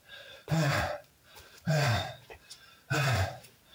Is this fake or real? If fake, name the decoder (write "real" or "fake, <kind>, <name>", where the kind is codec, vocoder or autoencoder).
fake, vocoder, BigVGAN v2